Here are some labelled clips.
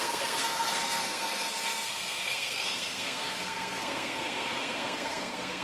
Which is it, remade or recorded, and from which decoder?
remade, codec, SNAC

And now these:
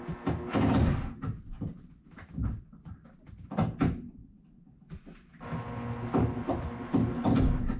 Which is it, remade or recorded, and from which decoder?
recorded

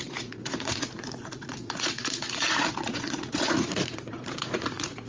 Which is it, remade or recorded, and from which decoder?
remade, vocoder, Vocos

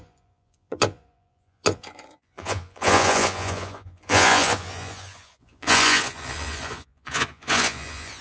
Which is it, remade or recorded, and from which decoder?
remade, vocoder, Vocos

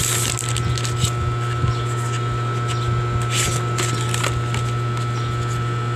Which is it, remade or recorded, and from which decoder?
recorded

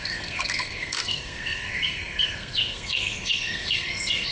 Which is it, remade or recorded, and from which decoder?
remade, codec, SNAC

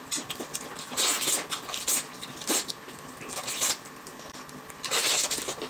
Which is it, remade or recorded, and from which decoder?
recorded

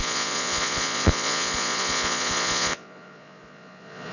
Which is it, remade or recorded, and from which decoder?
remade, vocoder, Vocos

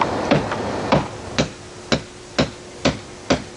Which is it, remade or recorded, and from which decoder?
recorded